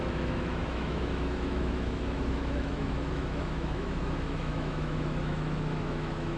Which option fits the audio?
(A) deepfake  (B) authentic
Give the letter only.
A